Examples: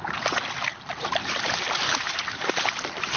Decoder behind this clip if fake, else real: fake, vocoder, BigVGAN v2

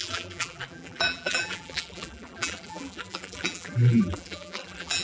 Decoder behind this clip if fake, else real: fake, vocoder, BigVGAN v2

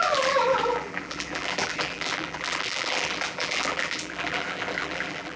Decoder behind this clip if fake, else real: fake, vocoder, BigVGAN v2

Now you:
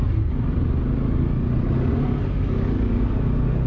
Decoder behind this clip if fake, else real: real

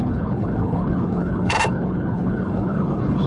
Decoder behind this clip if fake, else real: fake, codec, HILCodec